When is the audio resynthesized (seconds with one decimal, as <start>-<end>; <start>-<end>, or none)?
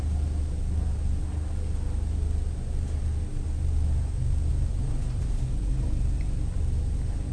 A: 4.5-5.9